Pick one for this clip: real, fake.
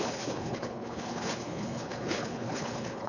fake